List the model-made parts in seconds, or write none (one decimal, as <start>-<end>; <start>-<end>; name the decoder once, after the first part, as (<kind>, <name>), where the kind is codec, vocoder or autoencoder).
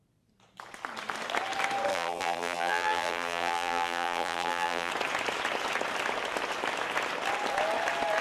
1.9-4.9 (vocoder, BigVGAN v2)